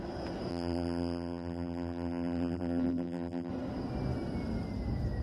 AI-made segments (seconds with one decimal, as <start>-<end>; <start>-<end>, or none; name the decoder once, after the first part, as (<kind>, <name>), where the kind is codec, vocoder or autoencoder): 0.5-3.5 (vocoder, BigVGAN v2)